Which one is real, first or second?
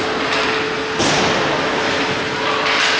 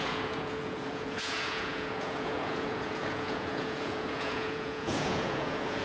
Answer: first